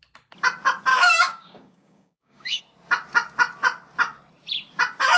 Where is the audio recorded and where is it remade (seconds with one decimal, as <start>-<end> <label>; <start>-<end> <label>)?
0.0-0.9 recorded; 0.9-2.6 remade; 2.6-5.2 recorded